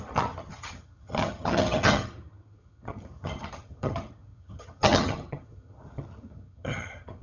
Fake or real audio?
fake